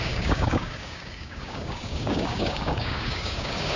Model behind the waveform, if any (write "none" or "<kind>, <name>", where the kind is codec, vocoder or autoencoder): codec, DAC